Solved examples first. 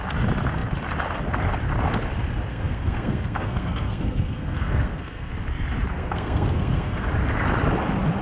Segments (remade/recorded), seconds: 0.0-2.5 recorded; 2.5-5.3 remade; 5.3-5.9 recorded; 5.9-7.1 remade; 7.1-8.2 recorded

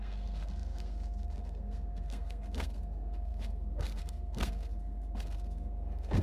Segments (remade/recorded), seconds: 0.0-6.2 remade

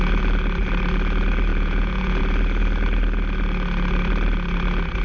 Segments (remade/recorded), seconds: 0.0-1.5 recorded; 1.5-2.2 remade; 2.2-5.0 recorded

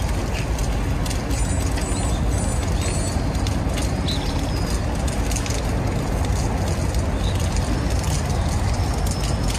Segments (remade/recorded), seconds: 0.0-9.6 recorded